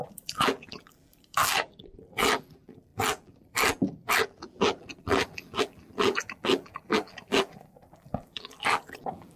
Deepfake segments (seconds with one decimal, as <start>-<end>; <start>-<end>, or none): 0.0-9.4